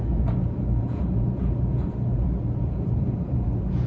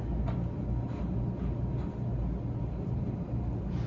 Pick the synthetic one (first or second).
first